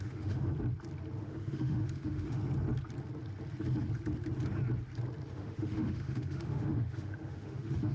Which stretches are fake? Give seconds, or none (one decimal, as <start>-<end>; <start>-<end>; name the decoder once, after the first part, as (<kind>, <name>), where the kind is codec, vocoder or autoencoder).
0.0-0.5 (autoencoder, DAC-VAE); 1.2-2.4; 5.3-7.9